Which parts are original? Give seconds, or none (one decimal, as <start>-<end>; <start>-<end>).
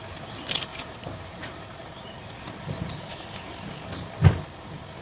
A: 0.0-0.7; 3.7-5.0